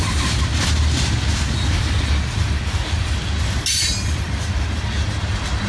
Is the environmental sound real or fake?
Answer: real